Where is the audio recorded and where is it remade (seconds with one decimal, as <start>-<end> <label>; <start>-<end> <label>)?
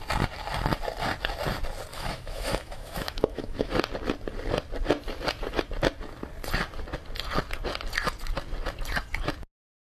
0.0-1.9 recorded; 1.9-3.7 remade; 3.7-9.9 recorded